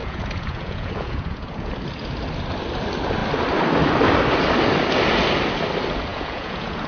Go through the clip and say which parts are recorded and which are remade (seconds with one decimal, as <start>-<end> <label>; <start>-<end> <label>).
0.0-1.7 remade; 1.7-6.1 recorded; 6.1-6.9 remade